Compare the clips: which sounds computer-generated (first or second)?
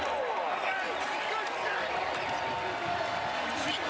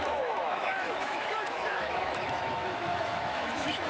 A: second